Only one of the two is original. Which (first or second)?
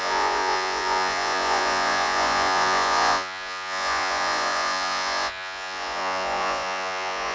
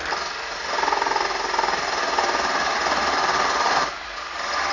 second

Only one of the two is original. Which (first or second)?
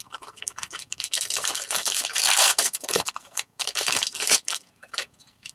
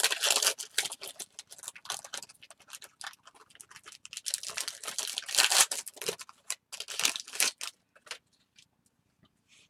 second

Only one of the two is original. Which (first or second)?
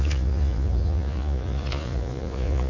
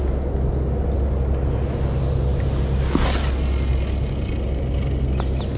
second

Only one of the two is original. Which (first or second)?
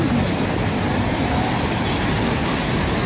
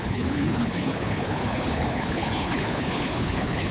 first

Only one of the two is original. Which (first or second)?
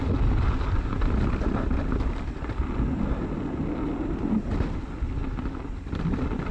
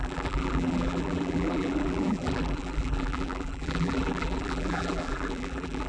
first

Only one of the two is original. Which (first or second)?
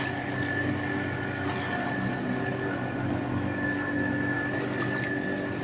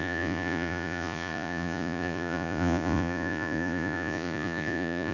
first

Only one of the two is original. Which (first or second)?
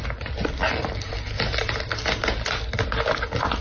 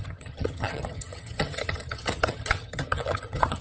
first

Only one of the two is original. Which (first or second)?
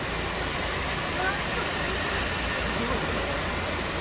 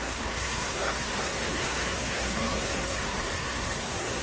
first